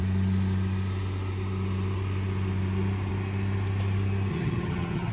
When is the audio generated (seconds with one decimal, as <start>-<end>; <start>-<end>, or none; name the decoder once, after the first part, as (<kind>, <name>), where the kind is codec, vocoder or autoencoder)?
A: 4.3-5.1 (vocoder, HiFi-GAN)